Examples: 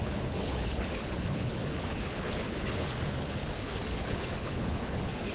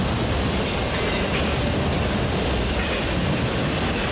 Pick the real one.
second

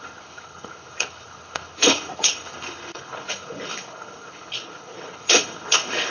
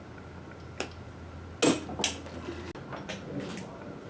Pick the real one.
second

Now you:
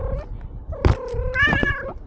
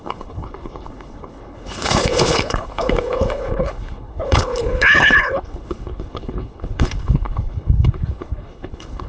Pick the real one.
first